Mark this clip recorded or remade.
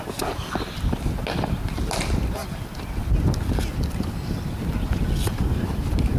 recorded